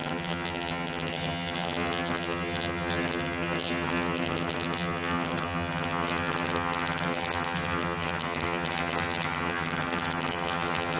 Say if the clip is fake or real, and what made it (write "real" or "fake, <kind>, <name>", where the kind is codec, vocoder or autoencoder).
fake, vocoder, HiFi-GAN